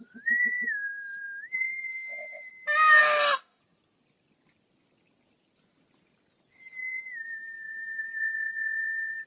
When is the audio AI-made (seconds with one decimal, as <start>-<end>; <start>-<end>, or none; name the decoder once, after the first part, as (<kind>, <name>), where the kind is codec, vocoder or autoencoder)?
1.9-2.5 (autoencoder, DAC-VAE); 3.0-3.6